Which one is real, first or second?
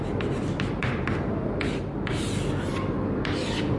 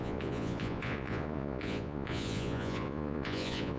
first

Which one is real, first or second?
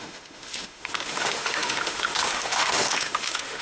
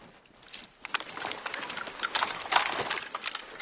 second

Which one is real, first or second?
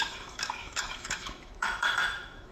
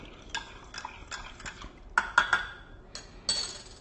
second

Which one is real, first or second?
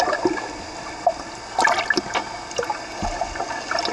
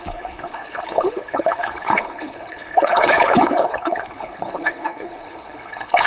first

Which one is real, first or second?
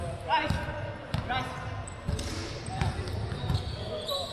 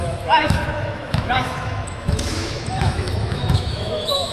first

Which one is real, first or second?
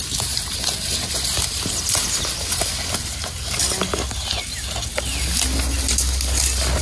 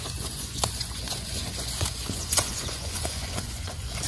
first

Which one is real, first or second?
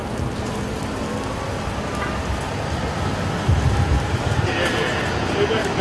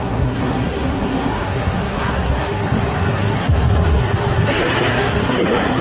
first